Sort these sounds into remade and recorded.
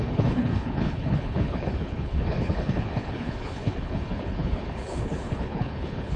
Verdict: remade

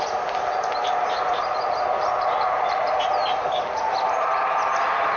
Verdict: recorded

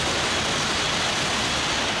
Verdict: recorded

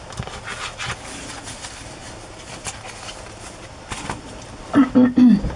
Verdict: recorded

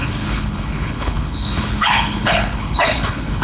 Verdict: remade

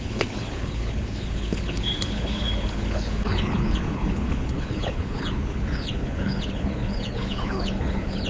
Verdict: remade